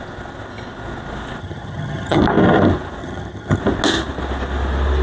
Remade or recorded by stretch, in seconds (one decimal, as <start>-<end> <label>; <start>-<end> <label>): 0.0-1.4 recorded; 1.4-2.2 remade; 2.2-3.0 recorded; 3.0-3.6 remade; 3.6-5.0 recorded